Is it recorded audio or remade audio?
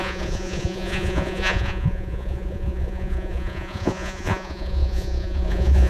remade